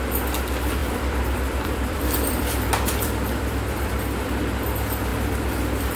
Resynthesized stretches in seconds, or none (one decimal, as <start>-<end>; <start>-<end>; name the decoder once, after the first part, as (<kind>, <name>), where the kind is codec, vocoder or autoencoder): 0.8-4.4 (vocoder, BigVGAN v2); 5.1-6.0